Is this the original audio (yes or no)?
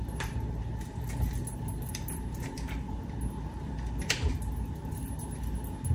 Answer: yes